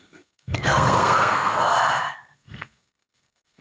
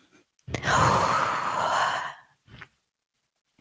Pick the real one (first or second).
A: second